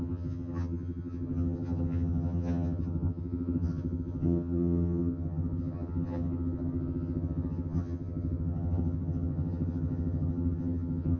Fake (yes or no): yes